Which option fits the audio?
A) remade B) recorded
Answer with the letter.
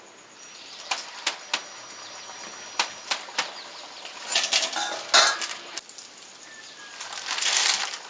B